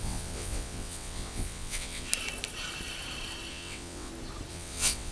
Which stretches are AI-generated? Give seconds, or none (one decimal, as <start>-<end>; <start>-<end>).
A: 0.0-2.1; 3.5-4.1; 4.5-5.1